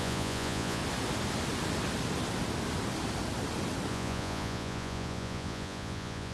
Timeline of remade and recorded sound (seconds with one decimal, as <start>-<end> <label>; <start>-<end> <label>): 0.0-0.8 remade; 0.8-3.9 recorded; 3.9-6.3 remade